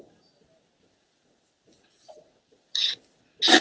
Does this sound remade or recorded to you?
recorded